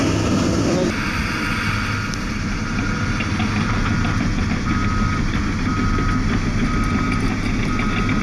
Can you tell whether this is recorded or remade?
recorded